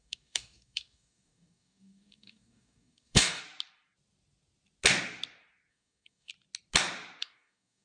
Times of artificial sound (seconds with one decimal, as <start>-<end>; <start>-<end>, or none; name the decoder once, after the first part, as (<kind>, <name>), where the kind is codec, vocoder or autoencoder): 0.0-3.4 (codec, DAC); 5.7-6.3; 7.2-7.8